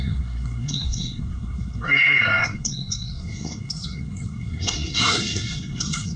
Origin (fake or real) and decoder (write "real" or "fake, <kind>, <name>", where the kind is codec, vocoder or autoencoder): fake, codec, SNAC